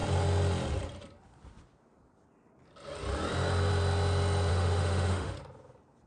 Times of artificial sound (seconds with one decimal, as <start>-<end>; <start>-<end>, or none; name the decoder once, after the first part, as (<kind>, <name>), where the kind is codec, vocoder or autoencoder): 4.5-5.3 (autoencoder, DAC-VAE)